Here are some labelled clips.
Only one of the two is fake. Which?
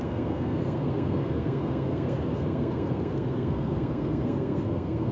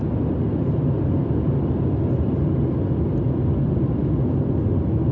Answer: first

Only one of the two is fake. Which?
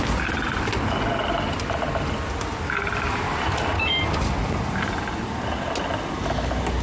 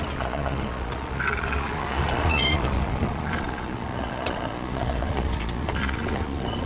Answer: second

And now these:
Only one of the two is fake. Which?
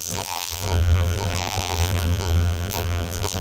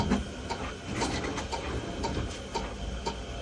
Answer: first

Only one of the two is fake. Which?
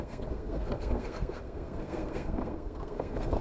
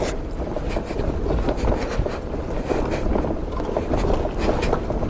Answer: first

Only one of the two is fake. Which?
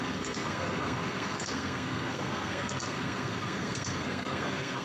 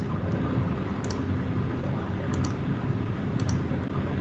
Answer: first